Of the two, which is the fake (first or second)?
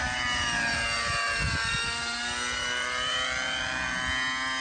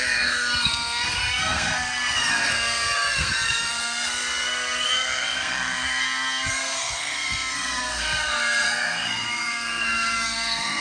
second